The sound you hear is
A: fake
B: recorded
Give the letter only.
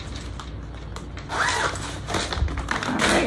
B